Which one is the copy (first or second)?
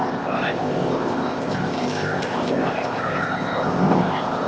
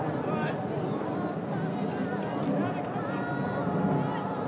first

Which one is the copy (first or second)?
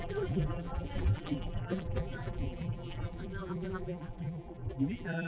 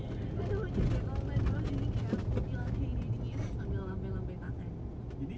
first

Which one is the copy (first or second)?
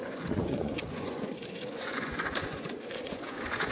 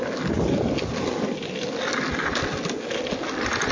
first